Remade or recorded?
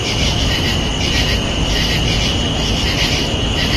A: remade